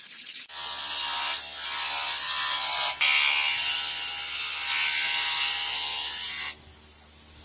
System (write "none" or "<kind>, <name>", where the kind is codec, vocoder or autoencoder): none